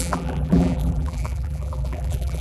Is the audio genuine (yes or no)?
no